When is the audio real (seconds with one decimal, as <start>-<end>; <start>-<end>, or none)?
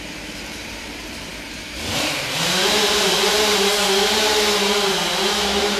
none